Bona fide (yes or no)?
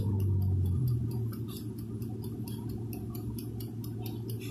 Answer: yes